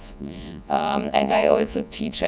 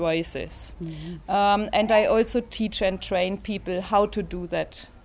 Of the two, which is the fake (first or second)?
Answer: first